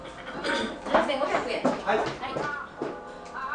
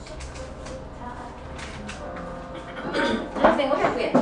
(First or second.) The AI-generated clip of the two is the first